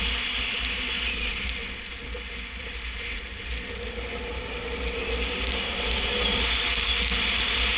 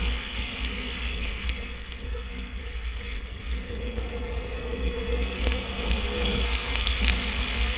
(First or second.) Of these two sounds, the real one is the first